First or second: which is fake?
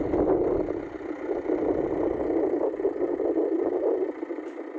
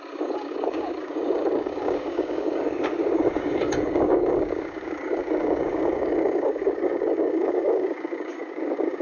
second